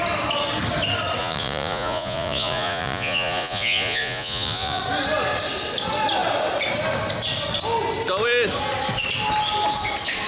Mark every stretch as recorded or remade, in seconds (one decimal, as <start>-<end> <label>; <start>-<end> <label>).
0.0-1.2 recorded; 1.2-4.8 remade; 4.8-10.3 recorded